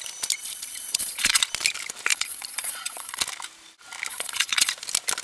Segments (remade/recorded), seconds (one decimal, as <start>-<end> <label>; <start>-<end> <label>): 0.0-0.4 recorded; 0.4-1.4 remade; 1.4-2.1 recorded; 2.1-3.2 remade; 3.2-4.1 recorded; 4.1-4.7 remade; 4.7-5.2 recorded